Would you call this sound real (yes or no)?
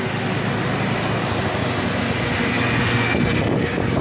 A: yes